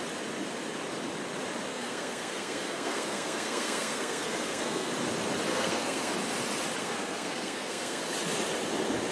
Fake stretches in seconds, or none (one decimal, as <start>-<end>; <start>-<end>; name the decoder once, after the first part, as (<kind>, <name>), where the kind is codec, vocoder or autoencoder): 1.7-4.9 (codec, SNAC); 5.5-6.1; 6.8-8.0